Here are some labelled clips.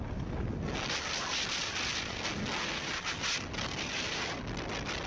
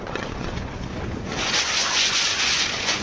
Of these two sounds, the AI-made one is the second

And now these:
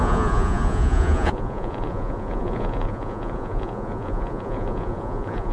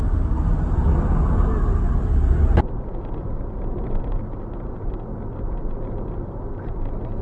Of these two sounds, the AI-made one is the first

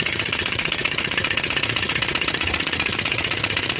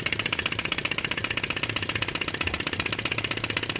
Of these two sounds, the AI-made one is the first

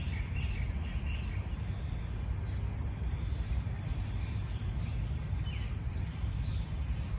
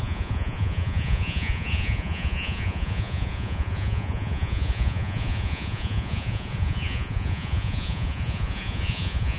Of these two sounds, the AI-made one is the second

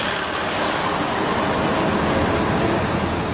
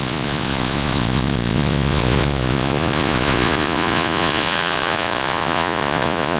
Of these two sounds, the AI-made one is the second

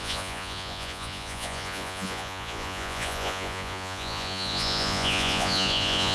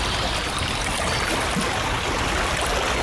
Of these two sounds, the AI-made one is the first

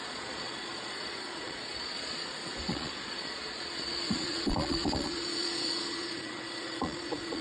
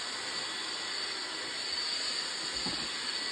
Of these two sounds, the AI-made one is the first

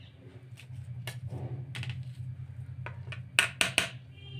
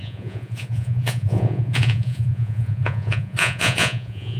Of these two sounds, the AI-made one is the second